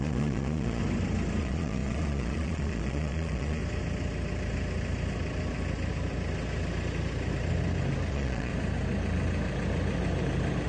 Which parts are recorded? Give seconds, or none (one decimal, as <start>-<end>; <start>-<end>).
0.8-1.4; 3.6-8.1; 8.5-10.7